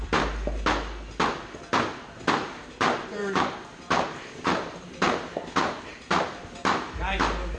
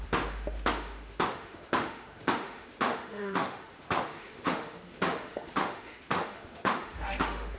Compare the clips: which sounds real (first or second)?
first